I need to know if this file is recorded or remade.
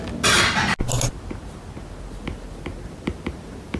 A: recorded